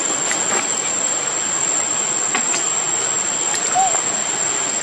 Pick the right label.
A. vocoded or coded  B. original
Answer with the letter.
B